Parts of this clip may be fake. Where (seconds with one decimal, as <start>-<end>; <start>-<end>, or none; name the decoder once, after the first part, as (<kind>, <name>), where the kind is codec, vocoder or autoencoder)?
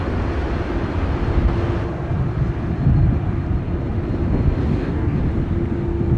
4.6-5.2 (codec, DAC)